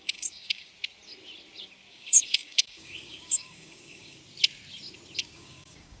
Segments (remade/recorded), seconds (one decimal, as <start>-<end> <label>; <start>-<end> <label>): 0.0-0.7 remade; 0.7-1.9 recorded; 1.9-4.2 remade; 4.2-5.2 recorded; 5.2-6.0 remade